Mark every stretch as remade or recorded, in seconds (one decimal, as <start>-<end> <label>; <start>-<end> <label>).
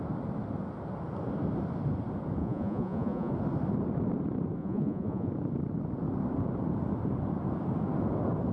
0.0-2.4 recorded; 2.4-3.3 remade; 3.3-4.6 recorded; 4.6-5.3 remade; 5.3-8.5 recorded